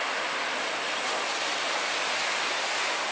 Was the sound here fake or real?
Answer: real